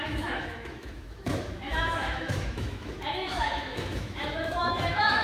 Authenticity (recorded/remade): remade